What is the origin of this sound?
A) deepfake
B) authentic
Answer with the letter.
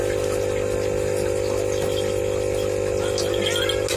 B